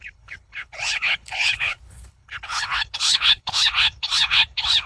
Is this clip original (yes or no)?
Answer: no